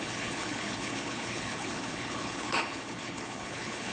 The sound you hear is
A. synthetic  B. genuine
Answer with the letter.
A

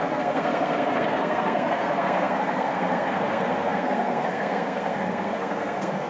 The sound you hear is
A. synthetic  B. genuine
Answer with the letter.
A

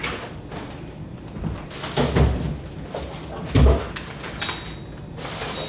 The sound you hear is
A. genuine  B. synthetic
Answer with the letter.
A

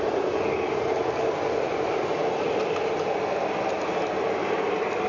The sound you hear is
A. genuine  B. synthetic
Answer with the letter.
A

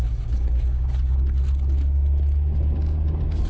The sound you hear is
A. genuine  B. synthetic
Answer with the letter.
A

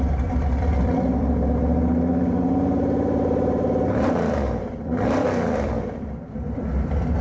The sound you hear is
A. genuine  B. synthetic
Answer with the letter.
B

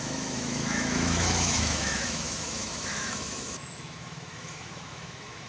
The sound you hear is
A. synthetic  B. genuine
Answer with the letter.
A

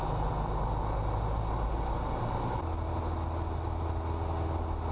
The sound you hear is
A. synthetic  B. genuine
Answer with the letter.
B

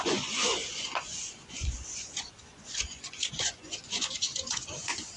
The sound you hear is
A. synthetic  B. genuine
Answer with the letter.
A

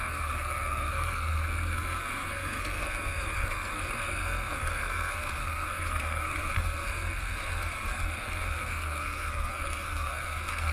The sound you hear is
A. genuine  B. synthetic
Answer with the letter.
B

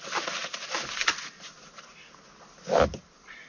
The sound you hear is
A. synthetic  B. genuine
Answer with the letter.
B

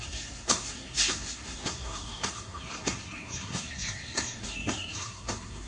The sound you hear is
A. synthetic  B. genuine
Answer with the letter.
A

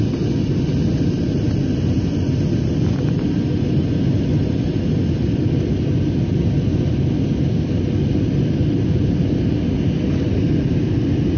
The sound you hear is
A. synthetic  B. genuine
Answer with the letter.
B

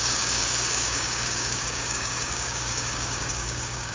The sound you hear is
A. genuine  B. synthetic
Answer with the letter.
B